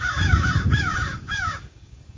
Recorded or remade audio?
remade